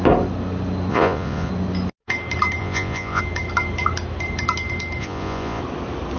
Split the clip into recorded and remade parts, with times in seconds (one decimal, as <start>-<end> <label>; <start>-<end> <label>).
0.0-0.9 recorded; 0.9-1.5 remade; 1.5-2.6 recorded; 2.6-3.2 remade; 3.2-5.0 recorded; 5.0-5.6 remade; 5.6-6.2 recorded